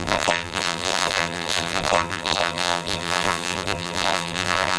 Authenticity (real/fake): fake